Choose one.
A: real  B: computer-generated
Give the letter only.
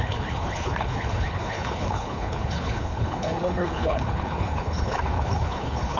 B